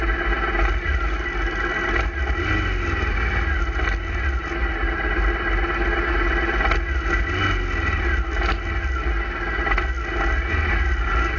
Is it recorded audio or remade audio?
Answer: recorded